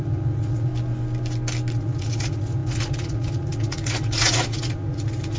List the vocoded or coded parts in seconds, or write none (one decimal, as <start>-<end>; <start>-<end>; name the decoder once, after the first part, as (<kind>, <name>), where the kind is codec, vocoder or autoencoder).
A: 0.0-0.7 (vocoder, Vocos); 1.7-5.4